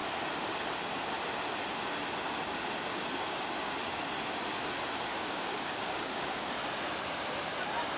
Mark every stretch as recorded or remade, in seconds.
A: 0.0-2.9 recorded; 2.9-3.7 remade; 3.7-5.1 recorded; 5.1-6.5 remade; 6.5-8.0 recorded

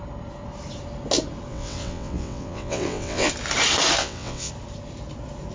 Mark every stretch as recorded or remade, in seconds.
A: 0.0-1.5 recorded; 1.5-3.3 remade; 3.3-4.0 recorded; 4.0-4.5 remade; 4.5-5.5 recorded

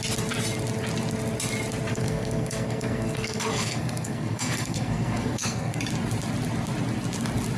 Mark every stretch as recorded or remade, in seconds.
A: 0.0-1.9 recorded; 1.9-5.8 remade; 5.8-7.6 recorded